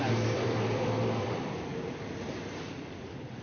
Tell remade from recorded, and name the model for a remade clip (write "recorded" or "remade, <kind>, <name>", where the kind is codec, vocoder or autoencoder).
remade, vocoder, BigVGAN v2